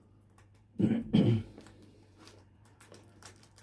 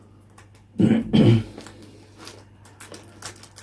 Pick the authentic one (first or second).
second